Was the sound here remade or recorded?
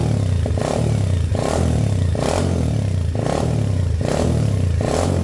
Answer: recorded